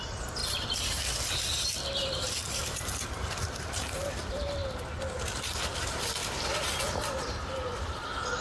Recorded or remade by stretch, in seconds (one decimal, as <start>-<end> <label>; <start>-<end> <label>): 0.0-4.6 remade; 4.6-5.4 recorded; 5.4-8.4 remade